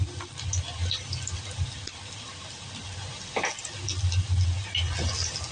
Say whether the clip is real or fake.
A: real